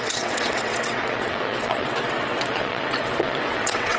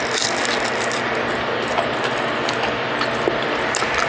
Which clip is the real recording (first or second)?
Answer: second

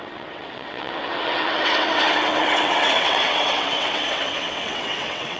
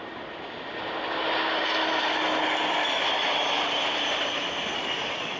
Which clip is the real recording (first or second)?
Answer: second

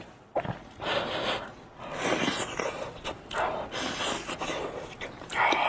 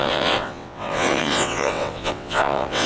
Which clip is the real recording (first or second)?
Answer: first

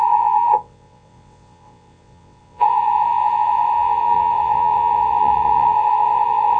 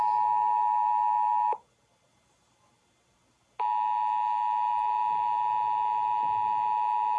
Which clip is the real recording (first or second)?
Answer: second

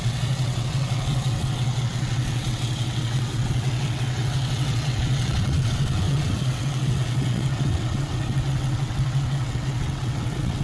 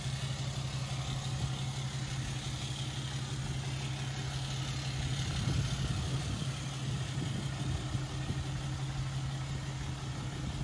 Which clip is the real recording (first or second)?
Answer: second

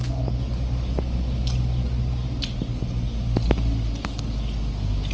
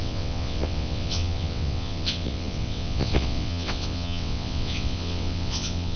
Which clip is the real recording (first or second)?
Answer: first